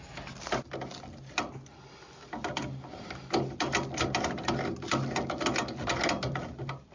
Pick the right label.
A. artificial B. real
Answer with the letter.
B